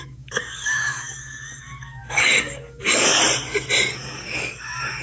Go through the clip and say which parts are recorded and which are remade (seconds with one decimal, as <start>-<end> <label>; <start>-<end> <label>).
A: 0.0-3.2 remade; 3.2-3.9 recorded; 3.9-5.0 remade